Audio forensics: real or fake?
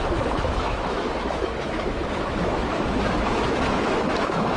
fake